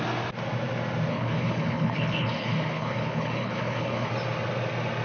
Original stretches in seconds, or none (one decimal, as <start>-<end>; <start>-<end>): 0.0-1.1; 4.1-5.0